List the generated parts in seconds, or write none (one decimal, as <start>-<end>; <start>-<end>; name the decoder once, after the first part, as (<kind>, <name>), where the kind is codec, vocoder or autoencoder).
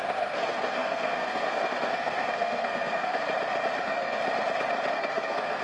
0.0-3.2 (codec, SNAC); 3.8-4.2; 4.9-5.6